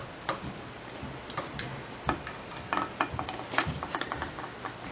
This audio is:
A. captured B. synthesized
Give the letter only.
A